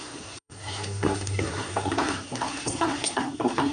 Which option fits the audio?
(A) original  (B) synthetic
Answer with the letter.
B